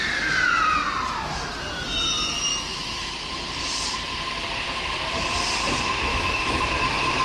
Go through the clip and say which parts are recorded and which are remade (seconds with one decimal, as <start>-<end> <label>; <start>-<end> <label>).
0.0-2.5 recorded; 2.5-3.3 remade; 3.3-6.1 recorded; 6.1-6.7 remade; 6.7-7.2 recorded